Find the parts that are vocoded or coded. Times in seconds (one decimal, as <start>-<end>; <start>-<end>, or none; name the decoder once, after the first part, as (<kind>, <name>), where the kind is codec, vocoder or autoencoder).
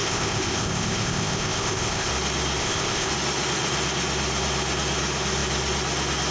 0.0-2.1 (codec, ZipCodec); 2.6-3.1